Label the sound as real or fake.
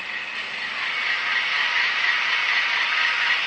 real